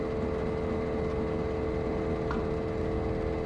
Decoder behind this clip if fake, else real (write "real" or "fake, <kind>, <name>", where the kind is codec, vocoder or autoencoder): real